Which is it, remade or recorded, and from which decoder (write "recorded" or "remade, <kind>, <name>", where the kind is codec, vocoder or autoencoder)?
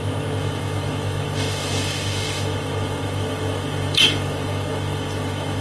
remade, autoencoder, DAC-VAE